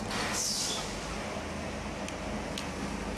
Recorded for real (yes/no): yes